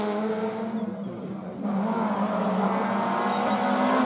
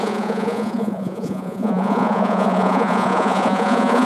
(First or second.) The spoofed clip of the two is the second